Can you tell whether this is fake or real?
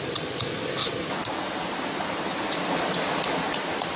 real